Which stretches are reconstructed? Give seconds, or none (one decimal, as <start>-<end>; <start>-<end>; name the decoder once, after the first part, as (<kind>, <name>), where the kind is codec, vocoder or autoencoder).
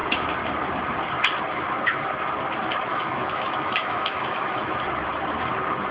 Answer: 2.9-4.8 (autoencoder, DAC-VAE)